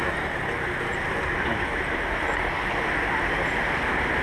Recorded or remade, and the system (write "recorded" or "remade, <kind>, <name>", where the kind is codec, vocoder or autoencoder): recorded